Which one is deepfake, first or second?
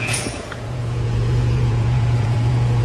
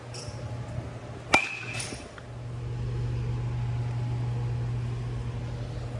first